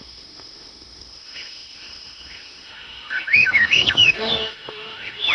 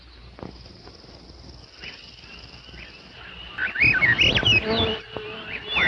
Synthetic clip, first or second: first